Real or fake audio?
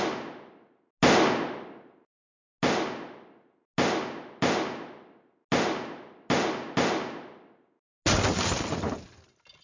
real